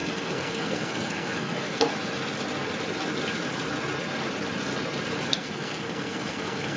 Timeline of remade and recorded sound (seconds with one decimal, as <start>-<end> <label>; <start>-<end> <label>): 0.0-1.9 remade; 1.9-5.3 recorded; 5.3-6.8 remade